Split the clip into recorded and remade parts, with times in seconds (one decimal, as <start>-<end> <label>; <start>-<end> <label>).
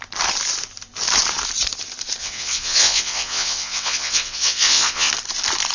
0.0-2.2 recorded; 2.2-5.1 remade; 5.1-5.7 recorded